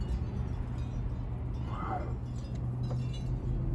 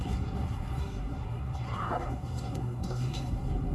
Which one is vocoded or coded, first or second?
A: second